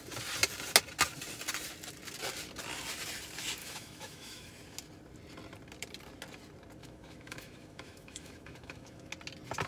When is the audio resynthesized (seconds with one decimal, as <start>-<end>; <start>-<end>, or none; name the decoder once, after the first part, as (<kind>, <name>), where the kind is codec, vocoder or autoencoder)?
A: 3.6-4.5 (autoencoder, DAC-VAE); 6.8-9.1